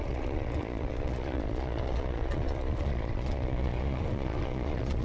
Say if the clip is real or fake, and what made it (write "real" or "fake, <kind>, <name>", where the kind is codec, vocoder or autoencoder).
fake, vocoder, Vocos